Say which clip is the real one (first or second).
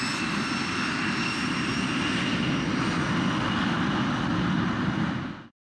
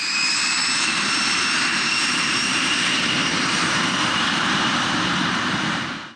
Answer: first